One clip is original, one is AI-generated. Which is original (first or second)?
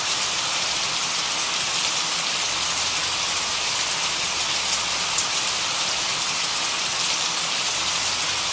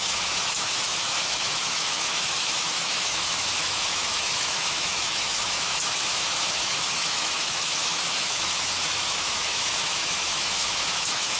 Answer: first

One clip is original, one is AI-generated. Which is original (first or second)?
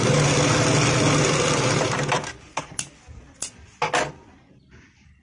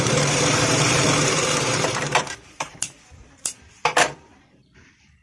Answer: first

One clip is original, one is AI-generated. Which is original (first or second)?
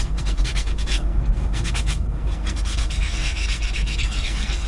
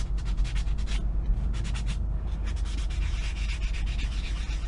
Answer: second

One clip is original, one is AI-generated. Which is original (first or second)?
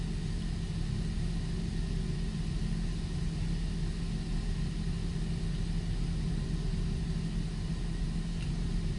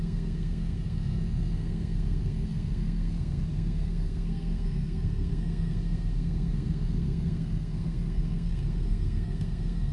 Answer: first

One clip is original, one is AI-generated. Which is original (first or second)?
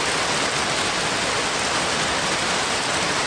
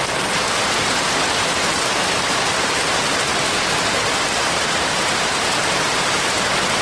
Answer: first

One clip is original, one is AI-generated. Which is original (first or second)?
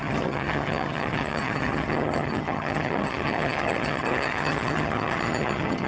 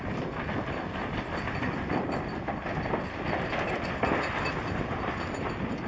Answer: second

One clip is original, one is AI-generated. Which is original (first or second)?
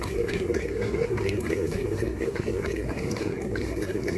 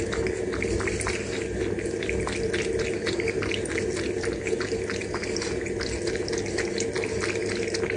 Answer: second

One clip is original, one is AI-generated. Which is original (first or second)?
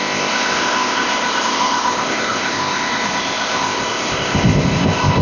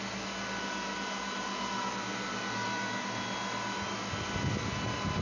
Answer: second